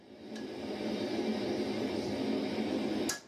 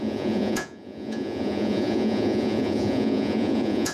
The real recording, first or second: first